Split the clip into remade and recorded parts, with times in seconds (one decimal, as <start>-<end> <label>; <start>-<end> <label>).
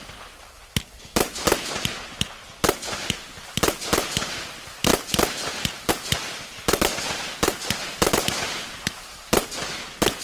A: 0.0-10.2 recorded